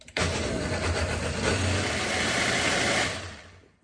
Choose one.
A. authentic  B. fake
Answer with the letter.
A